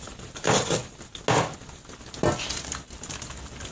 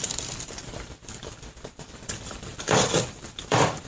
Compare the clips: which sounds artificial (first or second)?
second